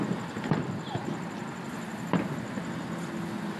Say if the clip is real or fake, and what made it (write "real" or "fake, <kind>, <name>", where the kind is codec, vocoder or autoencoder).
real